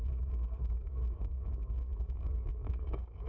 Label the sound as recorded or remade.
remade